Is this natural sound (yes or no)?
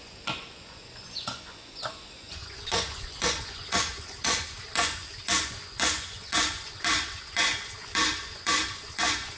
no